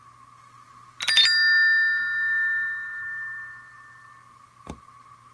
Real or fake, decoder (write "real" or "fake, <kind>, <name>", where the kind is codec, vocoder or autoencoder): real